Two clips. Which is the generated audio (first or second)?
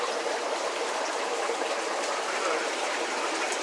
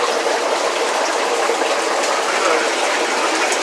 first